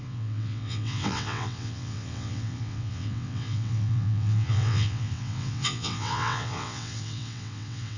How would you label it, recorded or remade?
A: remade